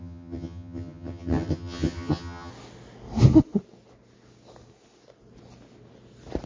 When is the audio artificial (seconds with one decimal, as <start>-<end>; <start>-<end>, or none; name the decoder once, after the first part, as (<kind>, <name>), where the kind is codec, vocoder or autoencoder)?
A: 0.0-2.5 (vocoder, HiFi-GAN)